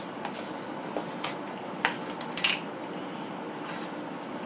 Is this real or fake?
real